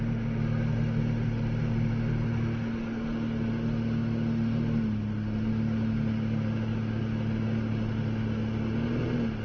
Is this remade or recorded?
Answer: recorded